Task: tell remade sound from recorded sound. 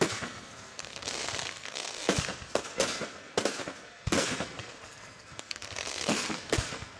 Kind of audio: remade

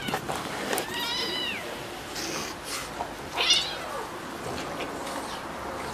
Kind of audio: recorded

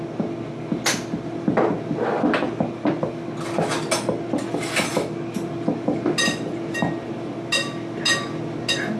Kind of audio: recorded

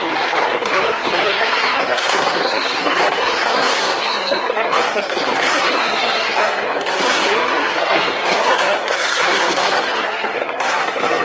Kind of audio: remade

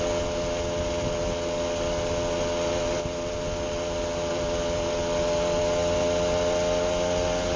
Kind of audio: recorded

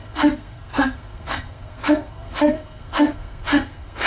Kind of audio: remade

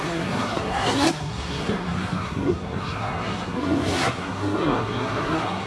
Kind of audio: remade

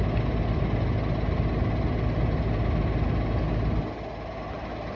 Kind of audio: recorded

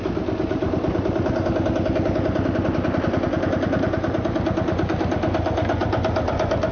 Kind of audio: recorded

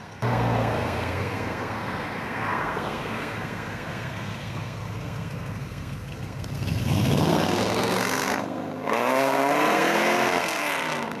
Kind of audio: remade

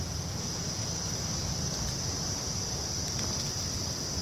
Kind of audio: recorded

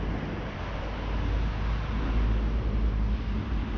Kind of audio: recorded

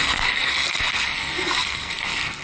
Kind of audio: remade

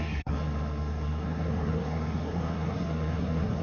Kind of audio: remade